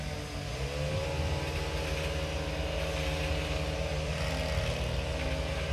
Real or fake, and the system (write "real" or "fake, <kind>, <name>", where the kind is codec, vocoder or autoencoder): real